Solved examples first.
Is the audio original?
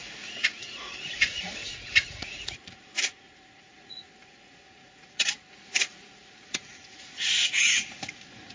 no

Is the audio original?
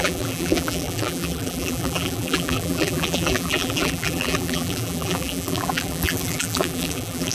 no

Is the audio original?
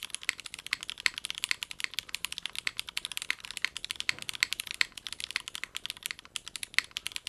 yes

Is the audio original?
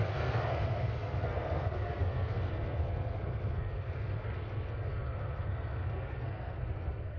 no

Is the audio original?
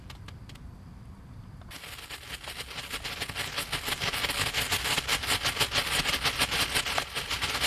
yes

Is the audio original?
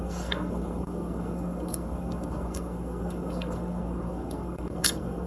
no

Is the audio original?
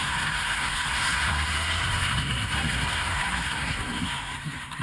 no